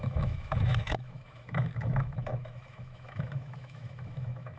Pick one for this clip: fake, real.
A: fake